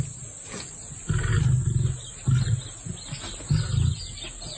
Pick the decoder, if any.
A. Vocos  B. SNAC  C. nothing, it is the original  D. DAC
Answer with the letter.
C